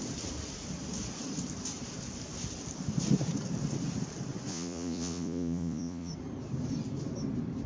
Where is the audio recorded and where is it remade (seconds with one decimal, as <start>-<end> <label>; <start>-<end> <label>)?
0.0-4.5 recorded; 4.5-6.1 remade; 6.1-7.7 recorded